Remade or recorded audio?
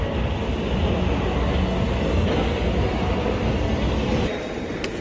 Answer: recorded